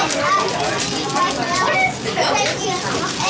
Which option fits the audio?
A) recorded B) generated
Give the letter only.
A